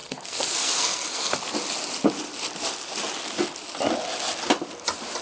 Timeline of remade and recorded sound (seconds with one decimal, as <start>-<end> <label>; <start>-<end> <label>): 0.0-1.3 remade; 1.3-5.2 recorded